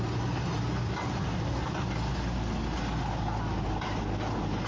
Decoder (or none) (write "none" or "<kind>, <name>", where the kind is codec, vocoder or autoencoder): none